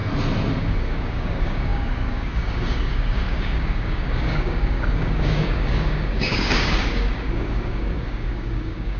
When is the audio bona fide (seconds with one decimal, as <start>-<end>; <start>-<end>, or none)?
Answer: 0.0-0.6